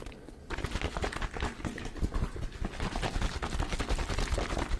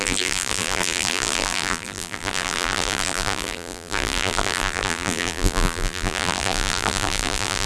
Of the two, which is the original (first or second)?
first